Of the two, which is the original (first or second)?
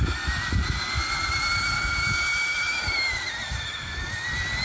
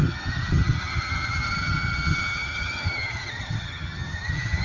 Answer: first